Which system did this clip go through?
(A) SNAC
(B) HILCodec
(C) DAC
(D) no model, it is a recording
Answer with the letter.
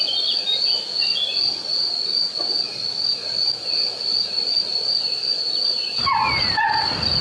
D